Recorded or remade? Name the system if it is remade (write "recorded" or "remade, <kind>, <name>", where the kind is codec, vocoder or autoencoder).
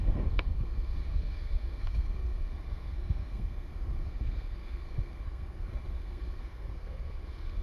remade, codec, SNAC